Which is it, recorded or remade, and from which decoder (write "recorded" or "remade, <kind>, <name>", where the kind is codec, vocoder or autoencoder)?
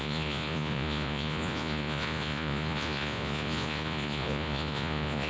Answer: remade, vocoder, Vocos